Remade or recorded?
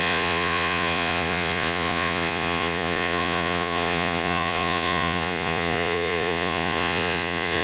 remade